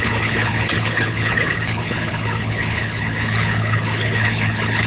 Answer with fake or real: fake